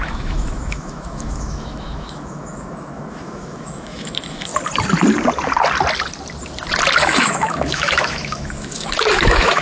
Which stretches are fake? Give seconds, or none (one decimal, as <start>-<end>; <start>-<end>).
0.0-4.5; 7.0-9.6